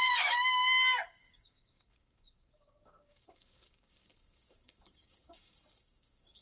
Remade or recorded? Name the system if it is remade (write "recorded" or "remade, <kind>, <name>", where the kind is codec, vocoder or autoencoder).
remade, codec, DAC